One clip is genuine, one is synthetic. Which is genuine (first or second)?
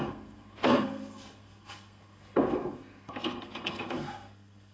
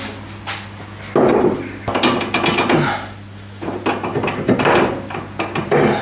second